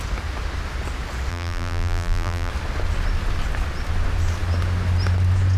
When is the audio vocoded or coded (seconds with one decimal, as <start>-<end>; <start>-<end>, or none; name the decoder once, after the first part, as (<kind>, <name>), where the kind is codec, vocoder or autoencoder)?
1.3-2.5 (vocoder, BigVGAN v2)